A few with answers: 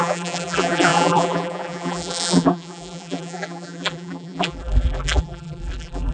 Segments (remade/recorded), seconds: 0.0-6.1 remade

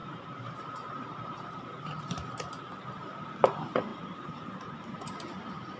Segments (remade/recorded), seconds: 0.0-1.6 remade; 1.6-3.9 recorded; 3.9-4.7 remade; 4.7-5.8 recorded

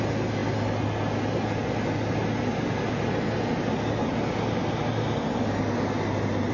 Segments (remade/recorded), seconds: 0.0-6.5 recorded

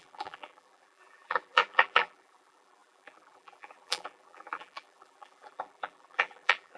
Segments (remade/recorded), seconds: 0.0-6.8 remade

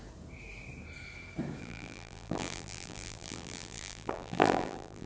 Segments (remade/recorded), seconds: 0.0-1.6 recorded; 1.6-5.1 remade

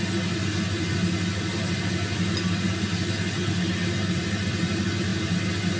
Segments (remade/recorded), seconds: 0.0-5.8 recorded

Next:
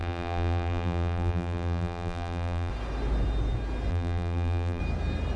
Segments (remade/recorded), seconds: 0.0-2.7 remade; 2.7-3.9 recorded; 3.9-4.8 remade; 4.8-5.4 recorded

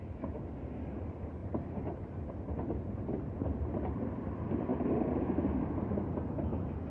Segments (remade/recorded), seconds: 0.0-1.4 recorded; 1.4-2.3 remade; 2.3-6.9 recorded